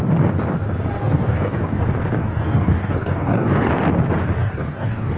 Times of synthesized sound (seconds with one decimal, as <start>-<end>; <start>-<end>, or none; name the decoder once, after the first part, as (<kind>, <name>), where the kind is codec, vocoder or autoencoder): 1.0-1.8 (codec, DAC); 2.2-3.7; 4.4-5.2